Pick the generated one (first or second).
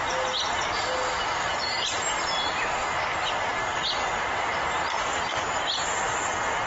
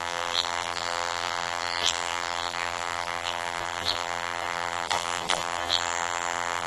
second